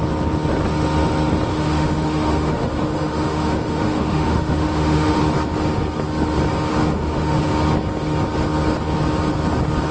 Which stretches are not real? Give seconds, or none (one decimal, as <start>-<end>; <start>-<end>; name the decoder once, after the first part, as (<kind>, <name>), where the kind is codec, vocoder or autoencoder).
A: 1.5-5.2 (autoencoder, DAC-VAE); 6.7-7.4